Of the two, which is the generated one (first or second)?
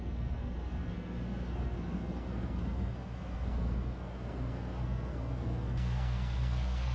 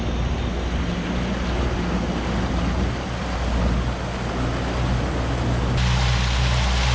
first